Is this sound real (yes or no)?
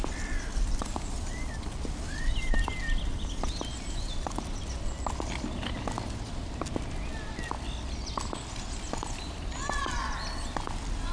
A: yes